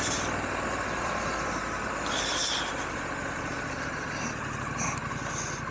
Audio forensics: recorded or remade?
recorded